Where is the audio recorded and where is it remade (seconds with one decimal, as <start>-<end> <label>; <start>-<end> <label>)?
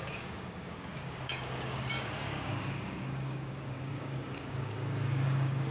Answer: 0.0-5.7 remade